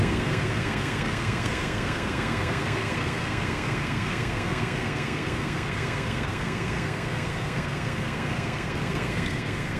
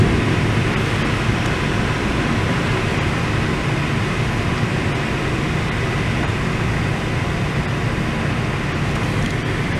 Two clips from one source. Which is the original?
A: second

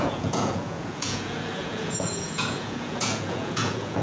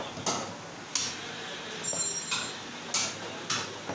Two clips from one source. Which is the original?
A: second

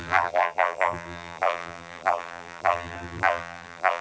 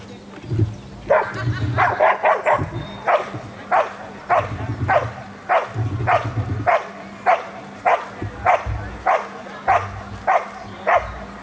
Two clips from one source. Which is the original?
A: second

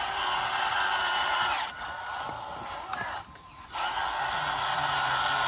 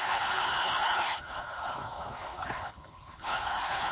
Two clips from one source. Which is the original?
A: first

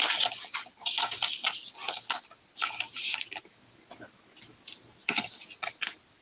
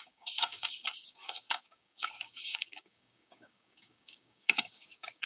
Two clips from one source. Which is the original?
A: first